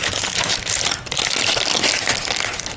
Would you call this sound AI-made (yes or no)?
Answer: no